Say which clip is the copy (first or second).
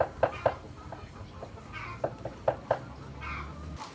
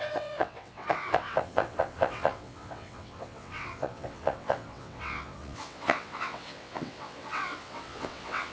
second